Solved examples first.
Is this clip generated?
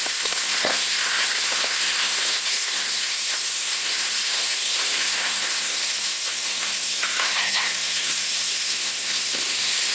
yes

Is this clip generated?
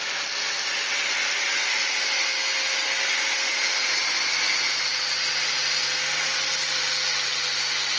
no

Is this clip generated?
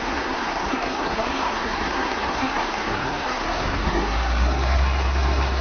yes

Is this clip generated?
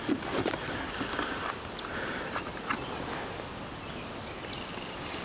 no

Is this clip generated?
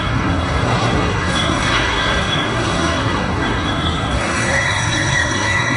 yes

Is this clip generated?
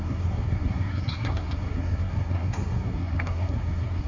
yes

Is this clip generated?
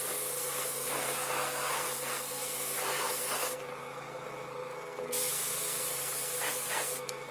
yes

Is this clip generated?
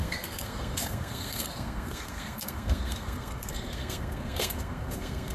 yes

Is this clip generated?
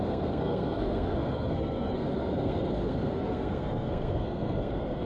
yes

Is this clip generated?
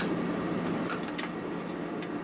no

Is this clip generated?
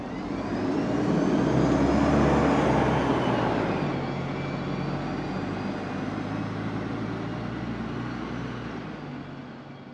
no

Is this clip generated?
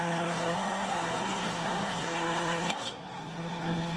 yes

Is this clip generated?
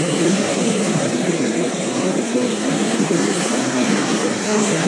yes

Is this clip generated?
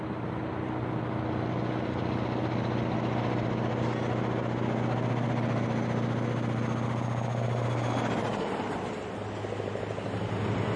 no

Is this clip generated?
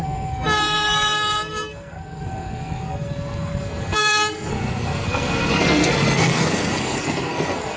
yes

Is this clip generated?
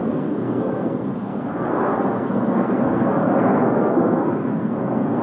yes